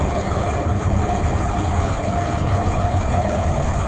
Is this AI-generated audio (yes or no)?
yes